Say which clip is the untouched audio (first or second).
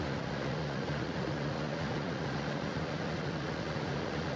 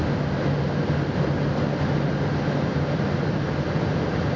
second